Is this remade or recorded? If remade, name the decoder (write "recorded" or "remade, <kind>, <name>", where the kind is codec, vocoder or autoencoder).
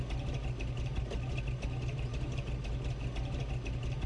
recorded